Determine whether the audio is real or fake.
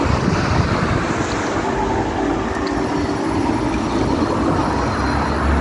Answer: real